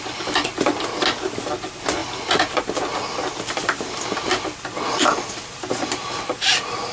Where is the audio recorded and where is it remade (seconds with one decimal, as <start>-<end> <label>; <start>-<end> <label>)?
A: 0.0-2.0 recorded; 2.0-6.1 remade; 6.1-6.9 recorded